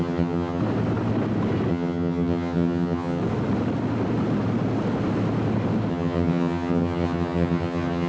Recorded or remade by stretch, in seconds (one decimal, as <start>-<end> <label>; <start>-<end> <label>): 0.0-0.6 remade; 0.6-1.7 recorded; 1.7-3.2 remade; 3.2-5.9 recorded; 5.9-8.1 remade